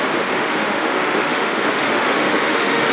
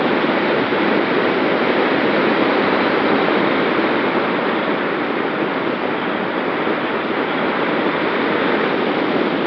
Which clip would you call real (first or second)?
second